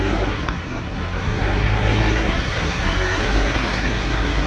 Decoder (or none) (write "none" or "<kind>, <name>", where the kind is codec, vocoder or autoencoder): codec, SNAC